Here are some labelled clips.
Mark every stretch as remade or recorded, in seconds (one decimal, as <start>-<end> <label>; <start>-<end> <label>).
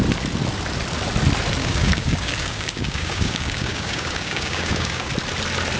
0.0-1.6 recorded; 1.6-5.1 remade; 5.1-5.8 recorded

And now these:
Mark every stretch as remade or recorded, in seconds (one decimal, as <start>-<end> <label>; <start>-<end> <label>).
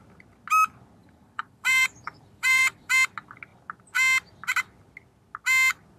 0.0-1.0 recorded; 1.0-2.9 remade; 2.9-6.0 recorded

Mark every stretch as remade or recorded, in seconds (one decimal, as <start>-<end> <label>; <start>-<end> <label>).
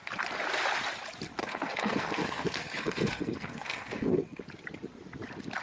0.0-1.4 recorded; 1.4-4.4 remade; 4.4-5.6 recorded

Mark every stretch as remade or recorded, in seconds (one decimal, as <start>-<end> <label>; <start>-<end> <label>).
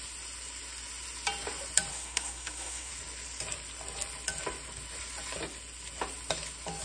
0.0-1.9 recorded; 1.9-2.9 remade; 2.9-6.8 recorded